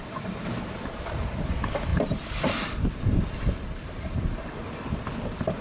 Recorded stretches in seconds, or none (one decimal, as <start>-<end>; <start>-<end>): 0.0-1.9